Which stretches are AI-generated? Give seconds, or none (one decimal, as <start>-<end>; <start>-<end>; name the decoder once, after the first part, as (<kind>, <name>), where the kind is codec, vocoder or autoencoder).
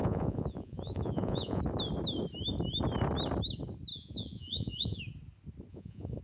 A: 0.0-1.6 (vocoder, Vocos); 3.9-5.0; 5.7-6.2